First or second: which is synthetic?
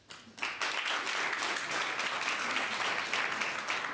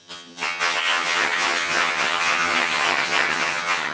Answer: second